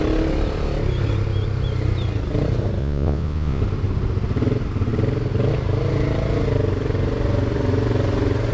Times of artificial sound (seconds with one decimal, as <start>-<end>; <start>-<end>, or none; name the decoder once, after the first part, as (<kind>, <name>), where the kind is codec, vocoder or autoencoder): 2.8-3.6 (vocoder, Vocos)